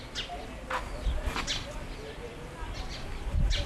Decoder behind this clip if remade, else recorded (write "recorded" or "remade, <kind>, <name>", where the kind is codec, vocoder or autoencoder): recorded